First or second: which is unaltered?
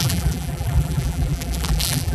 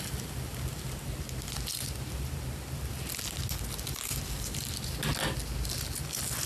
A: second